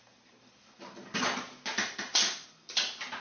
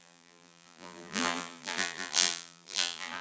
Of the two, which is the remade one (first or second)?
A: second